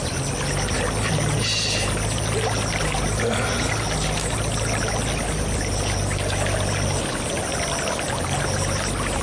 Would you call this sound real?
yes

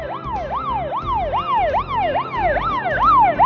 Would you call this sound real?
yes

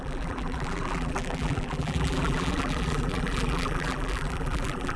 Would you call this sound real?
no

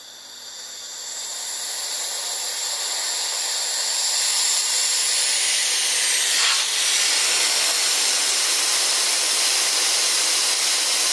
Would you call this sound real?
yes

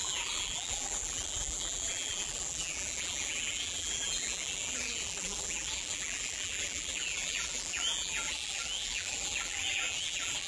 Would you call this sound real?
no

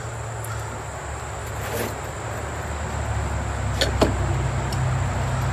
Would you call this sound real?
yes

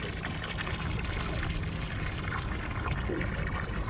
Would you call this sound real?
yes